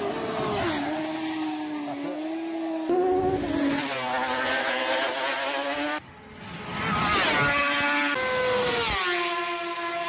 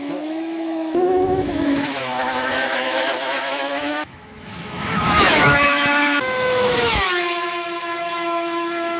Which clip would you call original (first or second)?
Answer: first